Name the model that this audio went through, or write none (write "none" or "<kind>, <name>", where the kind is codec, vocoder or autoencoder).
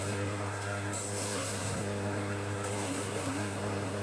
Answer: codec, SNAC